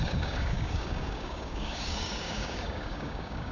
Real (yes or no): no